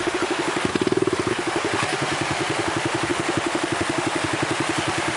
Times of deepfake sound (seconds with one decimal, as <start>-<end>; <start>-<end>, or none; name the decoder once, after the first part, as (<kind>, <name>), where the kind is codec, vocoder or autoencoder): 0.0-0.7 (autoencoder, DAC-VAE); 1.3-5.2